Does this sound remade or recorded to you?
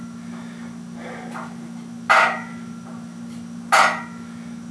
recorded